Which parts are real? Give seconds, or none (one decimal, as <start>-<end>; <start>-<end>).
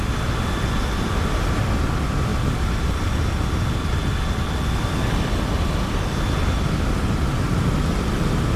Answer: 0.0-8.6